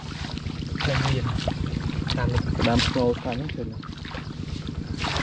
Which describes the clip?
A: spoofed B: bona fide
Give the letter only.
B